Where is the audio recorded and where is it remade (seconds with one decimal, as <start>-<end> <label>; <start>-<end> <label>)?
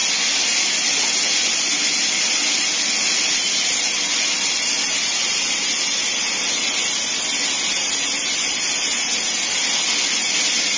0.0-10.8 recorded